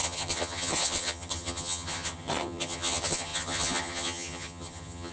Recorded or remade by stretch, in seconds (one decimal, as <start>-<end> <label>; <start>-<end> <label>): 0.0-5.1 remade